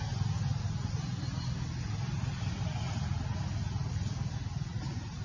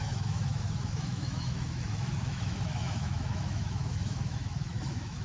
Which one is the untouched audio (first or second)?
first